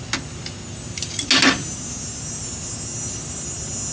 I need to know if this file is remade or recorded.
recorded